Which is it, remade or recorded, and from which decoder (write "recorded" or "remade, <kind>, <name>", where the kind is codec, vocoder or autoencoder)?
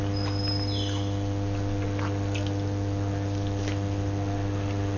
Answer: recorded